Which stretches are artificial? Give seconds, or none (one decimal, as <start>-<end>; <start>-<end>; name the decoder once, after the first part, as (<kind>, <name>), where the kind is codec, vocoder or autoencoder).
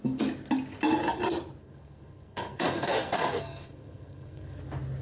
1.6-4.6 (codec, SNAC)